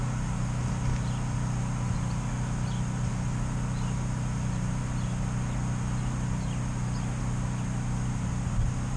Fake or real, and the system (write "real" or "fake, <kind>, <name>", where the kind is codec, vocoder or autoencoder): real